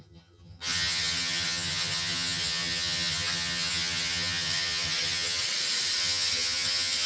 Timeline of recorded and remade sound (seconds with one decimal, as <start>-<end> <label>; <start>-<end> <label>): 0.0-5.4 remade; 5.4-6.0 recorded; 6.0-7.1 remade